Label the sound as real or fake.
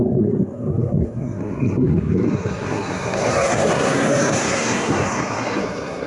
fake